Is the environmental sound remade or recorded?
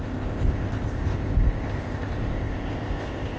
remade